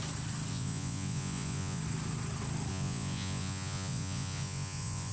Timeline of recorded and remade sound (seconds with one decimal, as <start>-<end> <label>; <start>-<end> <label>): 0.0-0.5 recorded; 0.5-1.8 remade; 1.8-2.7 recorded; 2.7-5.1 remade